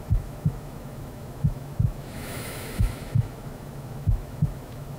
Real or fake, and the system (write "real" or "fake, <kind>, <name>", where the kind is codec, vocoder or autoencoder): fake, autoencoder, DAC-VAE